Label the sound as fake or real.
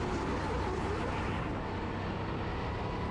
real